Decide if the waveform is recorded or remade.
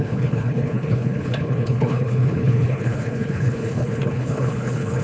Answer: remade